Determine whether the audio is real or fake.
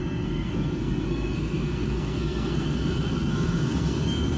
fake